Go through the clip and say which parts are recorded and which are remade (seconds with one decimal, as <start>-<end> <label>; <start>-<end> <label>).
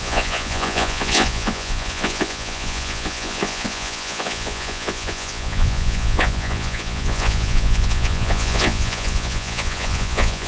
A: 0.0-10.5 remade